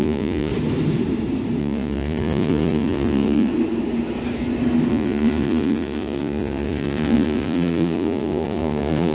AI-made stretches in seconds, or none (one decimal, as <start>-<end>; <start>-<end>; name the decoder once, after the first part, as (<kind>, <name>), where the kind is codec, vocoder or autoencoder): 0.0-0.5 (vocoder, Vocos); 1.6-3.5; 4.9-9.1